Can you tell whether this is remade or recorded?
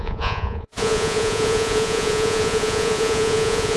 remade